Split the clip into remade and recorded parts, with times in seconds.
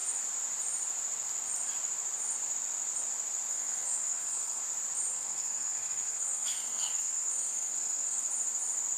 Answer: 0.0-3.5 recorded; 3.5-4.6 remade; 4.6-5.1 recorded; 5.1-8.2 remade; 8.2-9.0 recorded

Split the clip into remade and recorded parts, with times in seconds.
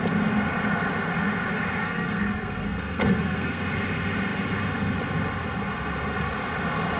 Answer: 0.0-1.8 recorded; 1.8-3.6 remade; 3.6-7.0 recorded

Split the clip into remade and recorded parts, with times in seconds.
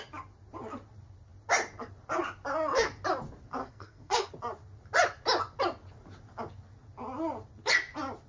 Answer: 0.0-3.6 recorded; 3.6-4.3 remade; 4.3-8.3 recorded